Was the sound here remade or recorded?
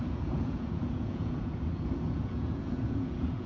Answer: remade